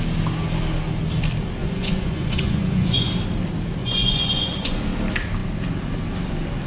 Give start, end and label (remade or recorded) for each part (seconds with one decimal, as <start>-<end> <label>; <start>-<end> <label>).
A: 0.0-1.6 recorded; 1.6-3.1 remade; 3.1-3.8 recorded; 3.8-4.8 remade; 4.8-6.7 recorded